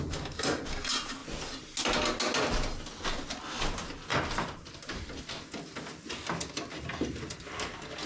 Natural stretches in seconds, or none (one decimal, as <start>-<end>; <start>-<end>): 0.0-4.1; 5.0-8.1